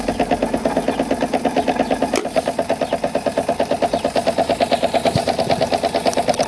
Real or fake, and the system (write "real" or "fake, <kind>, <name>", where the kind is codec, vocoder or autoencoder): real